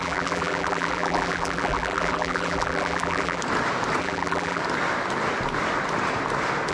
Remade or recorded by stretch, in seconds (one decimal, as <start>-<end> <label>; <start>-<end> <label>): 0.0-3.4 remade; 3.4-4.0 recorded; 4.0-4.6 remade; 4.6-6.7 recorded